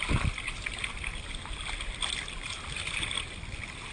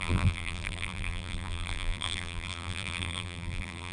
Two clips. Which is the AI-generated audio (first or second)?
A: second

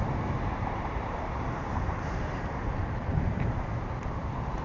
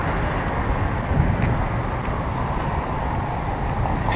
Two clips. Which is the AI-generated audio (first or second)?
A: first